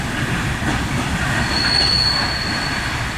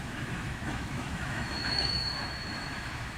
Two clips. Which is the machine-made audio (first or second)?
second